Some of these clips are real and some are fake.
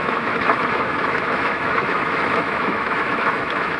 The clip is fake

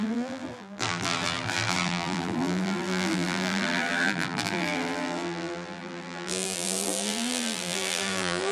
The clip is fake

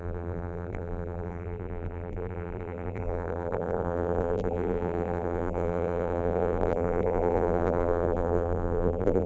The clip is fake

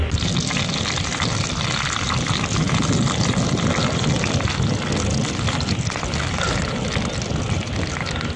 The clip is real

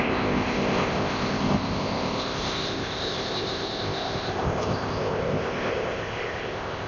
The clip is fake